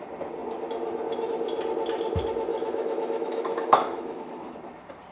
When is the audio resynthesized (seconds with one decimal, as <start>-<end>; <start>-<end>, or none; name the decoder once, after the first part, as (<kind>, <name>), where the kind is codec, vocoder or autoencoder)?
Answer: 2.5-4.5 (autoencoder, DAC-VAE)